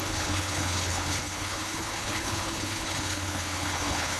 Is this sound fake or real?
fake